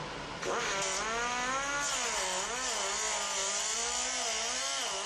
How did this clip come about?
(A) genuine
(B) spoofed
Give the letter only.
A